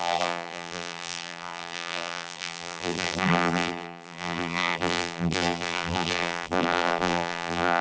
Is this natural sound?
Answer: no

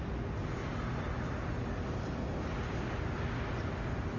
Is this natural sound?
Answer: yes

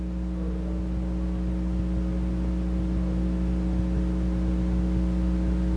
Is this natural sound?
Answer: yes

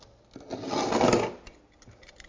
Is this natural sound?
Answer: yes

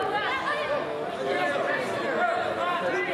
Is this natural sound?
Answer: yes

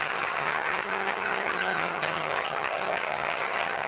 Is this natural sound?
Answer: no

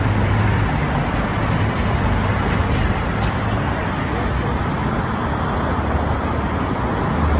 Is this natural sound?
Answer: yes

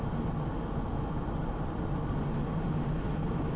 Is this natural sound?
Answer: yes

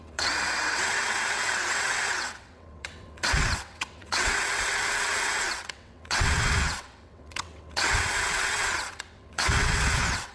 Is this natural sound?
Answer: no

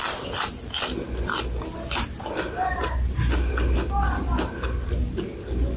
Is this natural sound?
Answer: yes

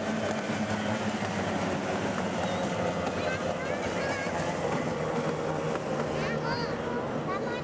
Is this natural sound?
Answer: yes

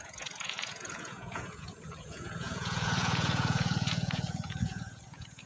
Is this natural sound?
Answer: no